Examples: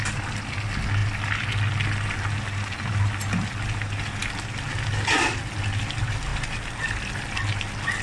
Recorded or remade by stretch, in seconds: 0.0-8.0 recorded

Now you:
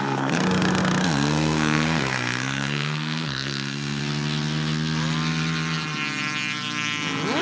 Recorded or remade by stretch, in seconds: 0.0-4.0 remade; 4.0-7.4 recorded

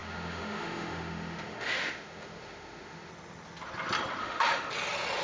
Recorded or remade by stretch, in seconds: 0.0-3.1 remade; 3.1-4.2 recorded; 4.2-4.7 remade; 4.7-5.2 recorded

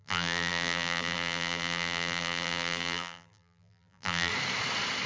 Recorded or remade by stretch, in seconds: 0.0-4.3 remade; 4.3-5.1 recorded

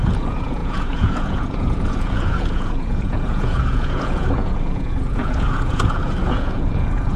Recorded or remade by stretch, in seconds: 0.0-7.2 remade

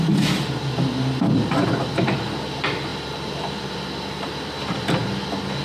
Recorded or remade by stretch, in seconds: 0.0-5.6 recorded

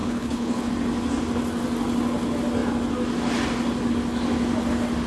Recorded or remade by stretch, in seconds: 0.0-0.7 remade; 0.7-5.1 recorded

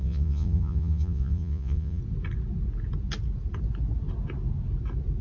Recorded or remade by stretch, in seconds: 0.0-2.0 remade; 2.0-5.2 recorded